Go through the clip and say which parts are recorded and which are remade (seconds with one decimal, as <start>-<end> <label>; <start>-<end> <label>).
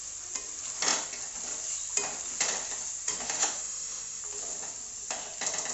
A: 0.0-3.1 recorded; 3.1-4.2 remade; 4.2-5.7 recorded